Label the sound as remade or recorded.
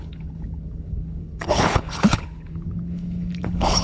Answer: remade